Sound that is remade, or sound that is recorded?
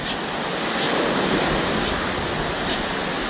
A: recorded